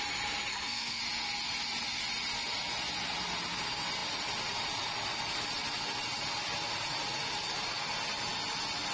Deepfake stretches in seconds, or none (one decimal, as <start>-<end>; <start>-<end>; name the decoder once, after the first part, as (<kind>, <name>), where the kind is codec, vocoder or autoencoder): 0.5-1.0 (codec, SNAC)